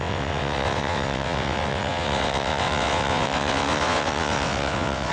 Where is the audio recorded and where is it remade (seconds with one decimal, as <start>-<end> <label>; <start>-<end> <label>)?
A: 0.0-5.1 remade